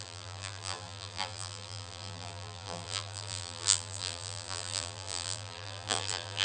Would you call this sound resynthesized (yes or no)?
yes